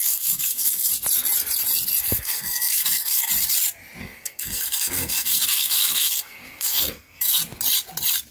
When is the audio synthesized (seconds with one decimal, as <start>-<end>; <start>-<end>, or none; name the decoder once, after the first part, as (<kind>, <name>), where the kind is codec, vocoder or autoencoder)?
0.0-0.9 (codec, SNAC); 2.0-3.3; 4.0-7.4